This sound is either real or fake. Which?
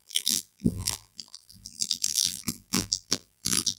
fake